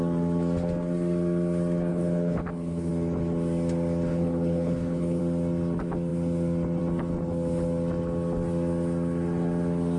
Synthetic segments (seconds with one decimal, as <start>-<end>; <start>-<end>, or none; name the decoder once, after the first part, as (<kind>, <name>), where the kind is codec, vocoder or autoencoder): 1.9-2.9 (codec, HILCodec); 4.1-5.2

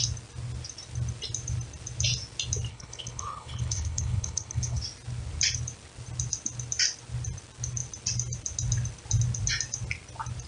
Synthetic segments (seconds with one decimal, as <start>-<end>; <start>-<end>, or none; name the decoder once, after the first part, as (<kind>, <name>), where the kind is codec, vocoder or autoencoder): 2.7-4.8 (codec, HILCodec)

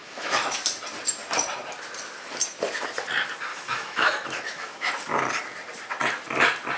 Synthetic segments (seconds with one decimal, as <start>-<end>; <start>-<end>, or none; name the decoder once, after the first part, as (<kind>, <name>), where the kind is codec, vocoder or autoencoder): 0.0-0.6 (autoencoder, DAC-VAE); 3.5-4.9

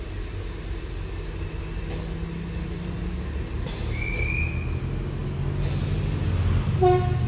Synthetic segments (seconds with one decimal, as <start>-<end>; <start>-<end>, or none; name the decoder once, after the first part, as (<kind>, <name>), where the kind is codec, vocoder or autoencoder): none

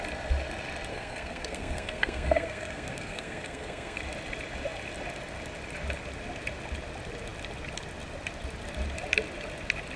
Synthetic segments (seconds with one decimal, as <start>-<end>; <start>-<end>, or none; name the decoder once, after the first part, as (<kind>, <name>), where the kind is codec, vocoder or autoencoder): 0.9-4.0 (codec, SNAC)